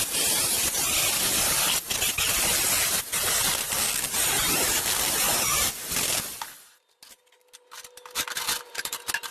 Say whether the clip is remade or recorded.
recorded